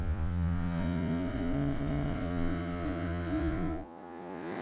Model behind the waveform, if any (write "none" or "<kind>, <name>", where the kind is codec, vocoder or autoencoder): vocoder, Vocos